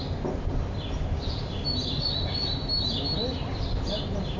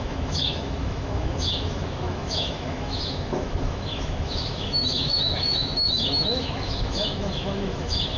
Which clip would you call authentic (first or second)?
first